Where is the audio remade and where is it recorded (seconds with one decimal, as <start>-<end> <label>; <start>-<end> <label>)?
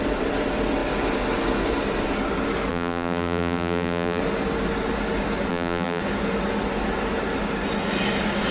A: 0.0-2.7 recorded; 2.7-4.2 remade; 4.2-5.5 recorded; 5.5-6.0 remade; 6.0-8.5 recorded